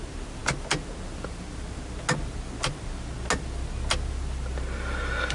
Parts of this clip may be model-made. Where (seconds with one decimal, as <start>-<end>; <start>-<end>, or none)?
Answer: none